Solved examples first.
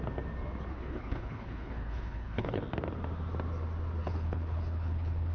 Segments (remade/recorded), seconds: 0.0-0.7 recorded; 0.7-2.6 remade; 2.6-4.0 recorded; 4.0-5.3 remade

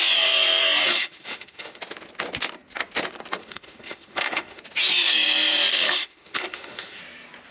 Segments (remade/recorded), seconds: 0.0-0.9 recorded; 0.9-1.8 remade; 1.8-3.4 recorded; 3.4-4.6 remade; 4.6-5.7 recorded; 5.7-7.0 remade; 7.0-7.5 recorded

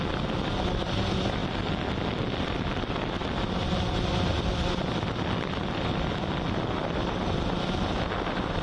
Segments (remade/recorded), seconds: 0.0-8.6 recorded

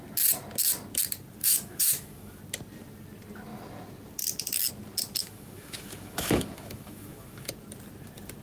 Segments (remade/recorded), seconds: 0.0-1.4 recorded; 1.4-2.4 remade; 2.4-5.2 recorded; 5.2-7.5 remade; 7.5-8.4 recorded

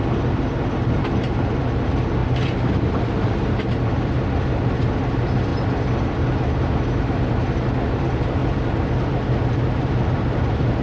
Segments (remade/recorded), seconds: 0.0-2.2 remade; 2.2-2.9 recorded; 2.9-5.5 remade; 5.5-7.9 recorded; 7.9-8.4 remade; 8.4-9.5 recorded; 9.5-10.8 remade